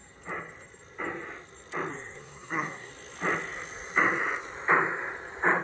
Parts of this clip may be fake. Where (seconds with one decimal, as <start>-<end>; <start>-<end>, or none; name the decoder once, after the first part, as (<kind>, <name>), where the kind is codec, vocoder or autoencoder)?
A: 1.9-2.9 (codec, SNAC)